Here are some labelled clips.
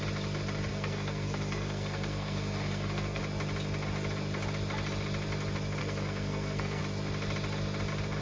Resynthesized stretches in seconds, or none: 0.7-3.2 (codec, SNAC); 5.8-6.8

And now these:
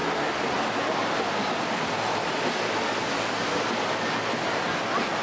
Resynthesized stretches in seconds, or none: none

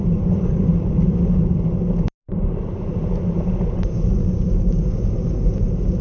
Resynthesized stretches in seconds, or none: 0.0-0.7 (vocoder, BigVGAN v2); 2.2-6.0

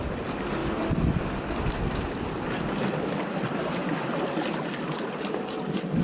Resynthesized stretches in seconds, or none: none

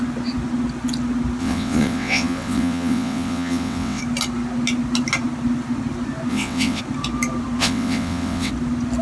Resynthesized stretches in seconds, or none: 1.4-4.0 (vocoder, WaveNeXt); 6.3-6.8; 7.6-8.5

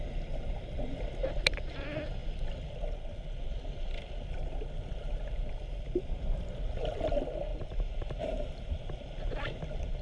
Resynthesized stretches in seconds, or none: 1.2-1.8 (vocoder, BigVGAN v2); 7.5-10.0

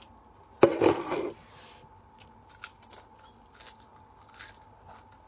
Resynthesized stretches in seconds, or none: none